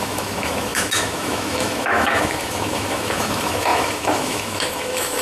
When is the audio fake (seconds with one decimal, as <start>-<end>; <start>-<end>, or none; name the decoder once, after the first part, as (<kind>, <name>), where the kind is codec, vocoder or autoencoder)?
0.0-5.2 (autoencoder, DAC-VAE)